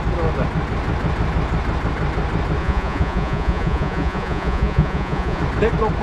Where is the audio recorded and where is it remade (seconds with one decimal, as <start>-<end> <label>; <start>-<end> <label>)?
0.0-2.6 recorded; 2.6-5.4 remade; 5.4-6.0 recorded